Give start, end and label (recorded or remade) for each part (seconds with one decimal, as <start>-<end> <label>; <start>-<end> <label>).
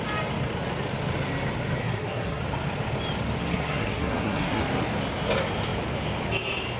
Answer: 0.0-1.8 recorded; 1.8-2.4 remade; 2.4-3.4 recorded; 3.4-4.6 remade; 4.6-6.8 recorded